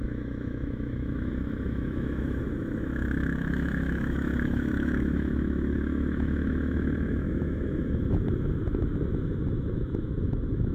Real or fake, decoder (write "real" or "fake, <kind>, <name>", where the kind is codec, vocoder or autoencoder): fake, autoencoder, DAC-VAE